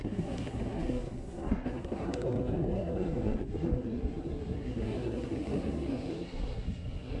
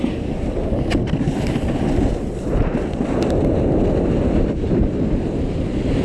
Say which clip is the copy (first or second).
first